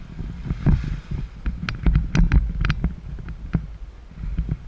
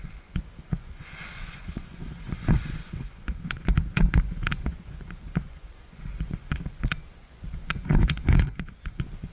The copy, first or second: second